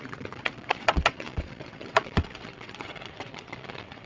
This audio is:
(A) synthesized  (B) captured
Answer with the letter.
A